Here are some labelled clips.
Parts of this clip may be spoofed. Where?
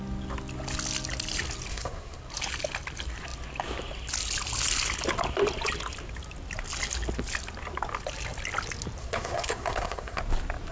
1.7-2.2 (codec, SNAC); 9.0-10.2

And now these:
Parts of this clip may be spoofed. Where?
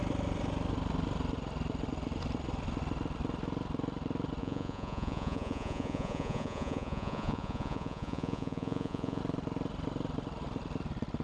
4.4-9.2 (vocoder, Vocos)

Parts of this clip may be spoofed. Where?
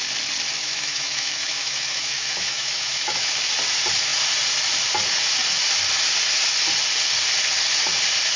0.6-3.3 (autoencoder, DAC-VAE)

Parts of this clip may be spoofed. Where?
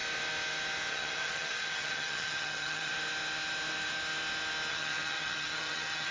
0.9-2.9 (vocoder, HiFi-GAN); 4.7-6.1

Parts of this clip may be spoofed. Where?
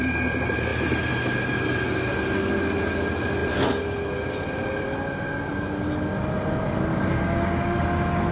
6.9-7.8 (codec, DAC)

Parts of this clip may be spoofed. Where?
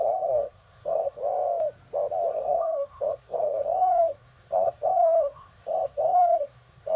0.0-1.2 (codec, SNAC); 2.3-7.0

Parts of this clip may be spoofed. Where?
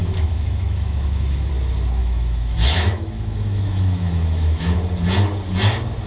0.0-1.5 (autoencoder, DAC-VAE); 2.0-4.8